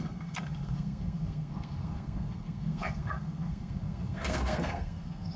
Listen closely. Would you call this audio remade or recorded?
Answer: remade